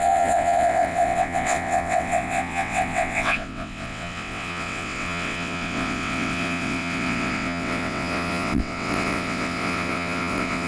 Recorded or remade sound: remade